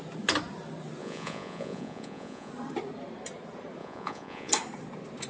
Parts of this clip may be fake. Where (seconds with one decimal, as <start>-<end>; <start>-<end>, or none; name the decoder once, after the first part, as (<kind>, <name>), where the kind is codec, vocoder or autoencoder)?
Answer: 1.0-2.5 (vocoder, Vocos); 3.8-4.5